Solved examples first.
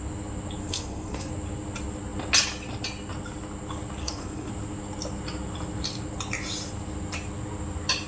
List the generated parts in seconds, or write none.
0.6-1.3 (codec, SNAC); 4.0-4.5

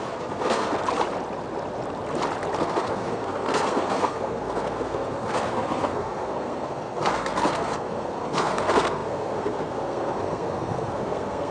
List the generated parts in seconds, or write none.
0.0-0.8 (codec, SNAC); 2.6-11.5

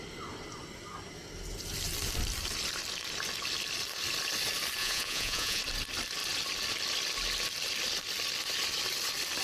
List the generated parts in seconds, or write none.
4.8-5.6 (vocoder, Vocos)

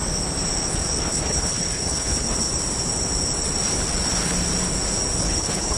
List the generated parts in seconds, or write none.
1.0-2.5 (codec, HILCodec); 5.2-5.8